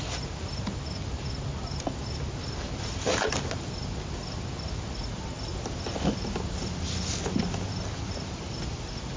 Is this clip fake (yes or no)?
no